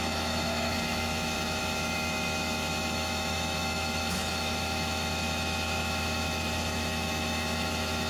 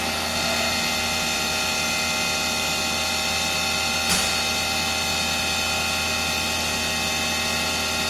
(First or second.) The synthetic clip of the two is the first